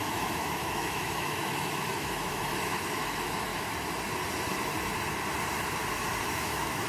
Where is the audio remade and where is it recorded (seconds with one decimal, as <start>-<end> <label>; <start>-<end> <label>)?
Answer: 0.0-3.5 remade; 3.5-6.3 recorded; 6.3-6.9 remade